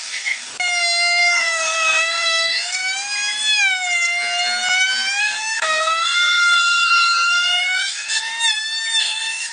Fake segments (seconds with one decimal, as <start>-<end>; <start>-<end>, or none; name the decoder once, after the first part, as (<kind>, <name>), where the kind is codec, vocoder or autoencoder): 0.0-0.5 (codec, DAC); 1.2-2.8; 5.2-8.3; 9.0-9.5